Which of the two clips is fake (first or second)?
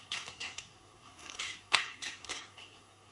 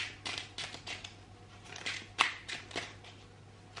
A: first